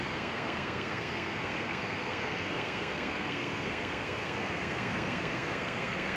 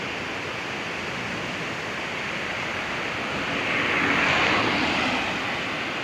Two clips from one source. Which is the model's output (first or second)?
first